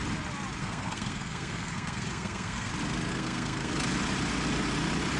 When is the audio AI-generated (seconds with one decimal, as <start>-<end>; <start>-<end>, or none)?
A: 0.6-2.7; 3.1-3.7